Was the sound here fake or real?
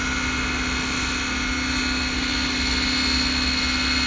real